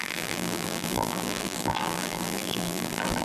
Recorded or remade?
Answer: remade